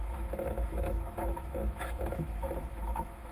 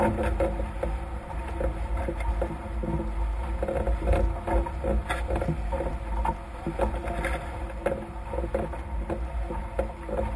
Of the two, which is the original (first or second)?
second